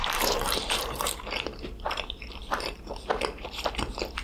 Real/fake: fake